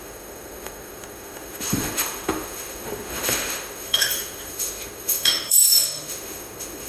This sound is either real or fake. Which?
fake